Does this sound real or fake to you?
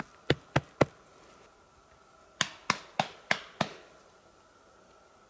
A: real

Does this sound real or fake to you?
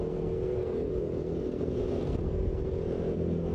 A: fake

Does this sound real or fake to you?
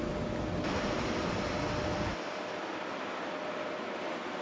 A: real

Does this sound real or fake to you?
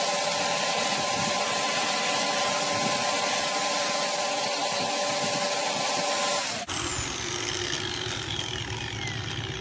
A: real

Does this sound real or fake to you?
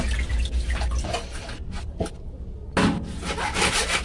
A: real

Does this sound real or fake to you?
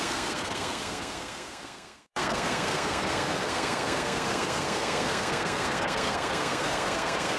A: fake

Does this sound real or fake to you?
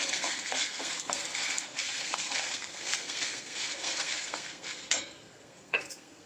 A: fake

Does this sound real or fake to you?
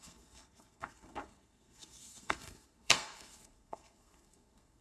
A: fake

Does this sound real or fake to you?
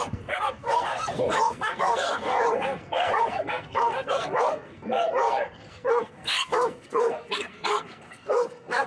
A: fake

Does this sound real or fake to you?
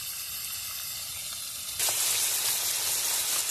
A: real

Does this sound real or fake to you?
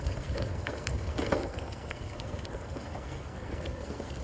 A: fake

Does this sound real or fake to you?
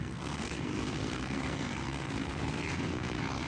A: fake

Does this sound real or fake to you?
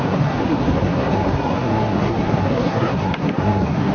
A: fake